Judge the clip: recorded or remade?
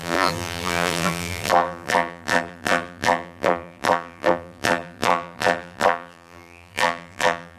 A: remade